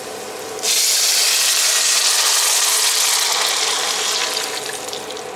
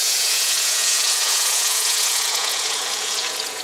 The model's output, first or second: second